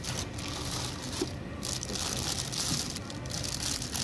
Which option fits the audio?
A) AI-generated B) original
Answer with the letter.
B